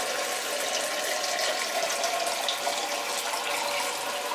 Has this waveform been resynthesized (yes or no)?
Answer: no